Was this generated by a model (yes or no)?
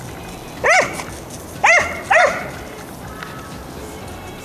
no